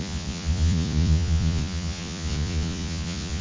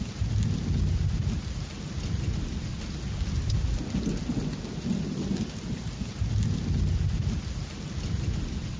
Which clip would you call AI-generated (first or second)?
first